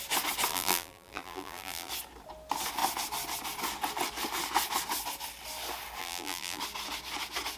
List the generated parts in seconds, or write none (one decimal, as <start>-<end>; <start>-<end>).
0.5-1.9; 6.0-6.6